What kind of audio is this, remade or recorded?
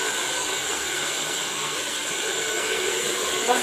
remade